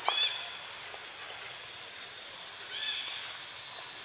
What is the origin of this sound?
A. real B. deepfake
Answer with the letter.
A